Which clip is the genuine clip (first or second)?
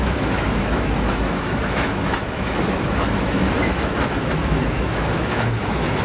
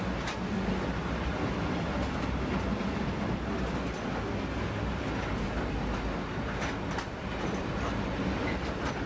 second